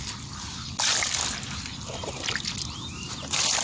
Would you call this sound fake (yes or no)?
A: no